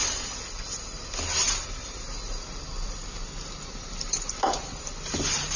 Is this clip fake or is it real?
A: fake